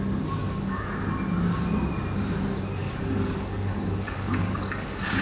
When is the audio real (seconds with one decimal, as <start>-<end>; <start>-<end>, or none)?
0.0-0.4; 0.9-2.8